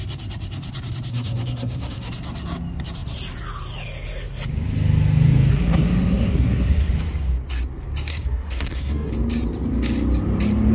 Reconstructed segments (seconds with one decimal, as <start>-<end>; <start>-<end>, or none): 1.1-2.1; 5.5-6.9; 8.1-9.1